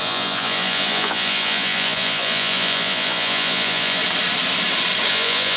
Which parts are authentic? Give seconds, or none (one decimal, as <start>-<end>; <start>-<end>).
4.0-5.1